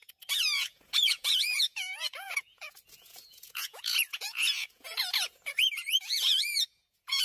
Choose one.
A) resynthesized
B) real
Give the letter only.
A